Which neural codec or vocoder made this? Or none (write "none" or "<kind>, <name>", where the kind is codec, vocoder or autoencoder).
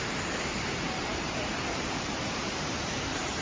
vocoder, BigVGAN v2